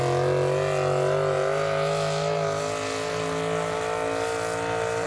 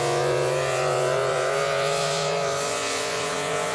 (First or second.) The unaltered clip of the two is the first